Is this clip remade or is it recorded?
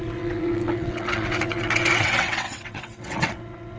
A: remade